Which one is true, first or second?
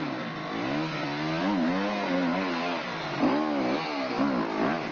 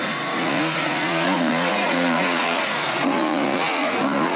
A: first